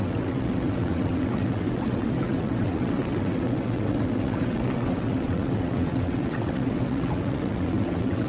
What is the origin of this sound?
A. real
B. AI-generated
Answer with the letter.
B